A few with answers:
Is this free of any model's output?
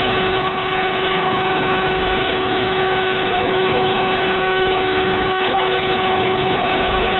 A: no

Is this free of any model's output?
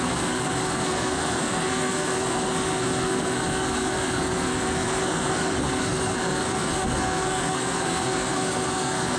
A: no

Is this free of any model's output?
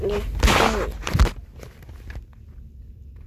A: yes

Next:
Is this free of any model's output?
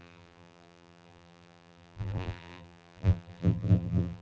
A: no